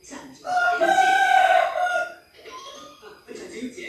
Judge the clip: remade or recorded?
recorded